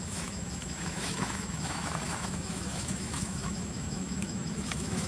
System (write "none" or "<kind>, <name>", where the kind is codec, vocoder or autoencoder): autoencoder, DAC-VAE